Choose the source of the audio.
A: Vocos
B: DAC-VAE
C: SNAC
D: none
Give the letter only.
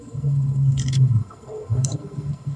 C